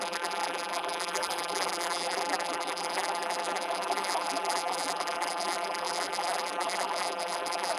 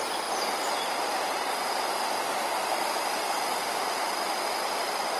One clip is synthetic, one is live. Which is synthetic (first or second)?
first